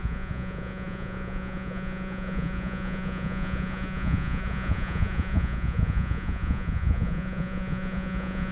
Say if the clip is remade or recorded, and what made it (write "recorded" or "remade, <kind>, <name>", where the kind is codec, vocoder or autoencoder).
remade, vocoder, Vocos